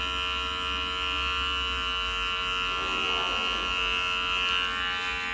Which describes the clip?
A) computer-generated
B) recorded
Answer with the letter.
B